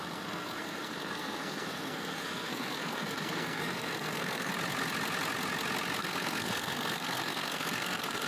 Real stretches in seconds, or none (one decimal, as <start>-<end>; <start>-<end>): 4.5-6.0